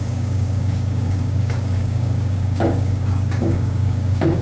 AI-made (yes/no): yes